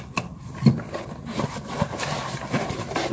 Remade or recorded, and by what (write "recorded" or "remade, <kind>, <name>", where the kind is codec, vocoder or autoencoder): recorded